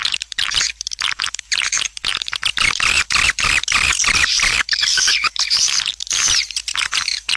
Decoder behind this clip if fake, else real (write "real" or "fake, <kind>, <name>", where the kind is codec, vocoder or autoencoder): fake, vocoder, BigVGAN v2